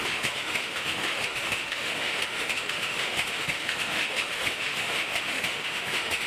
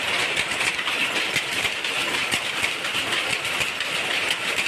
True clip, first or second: second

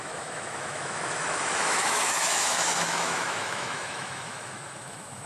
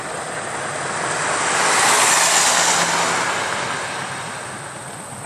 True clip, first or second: second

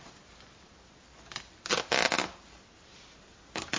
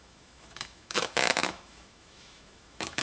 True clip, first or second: first